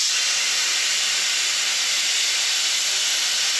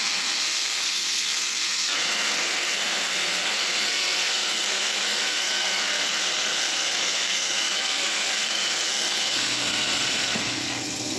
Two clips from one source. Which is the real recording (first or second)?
first